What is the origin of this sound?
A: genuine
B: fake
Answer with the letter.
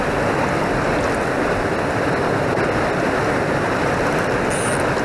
A